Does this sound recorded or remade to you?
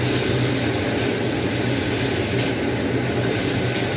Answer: recorded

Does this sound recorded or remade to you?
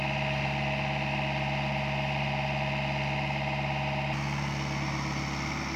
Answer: recorded